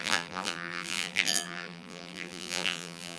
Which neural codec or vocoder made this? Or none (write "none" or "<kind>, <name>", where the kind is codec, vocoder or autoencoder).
vocoder, BigVGAN v2